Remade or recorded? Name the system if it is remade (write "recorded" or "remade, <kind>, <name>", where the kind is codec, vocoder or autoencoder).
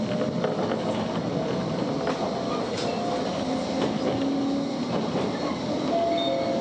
recorded